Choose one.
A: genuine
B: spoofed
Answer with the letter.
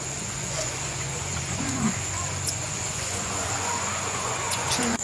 B